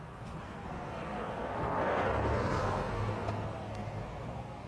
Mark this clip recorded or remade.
remade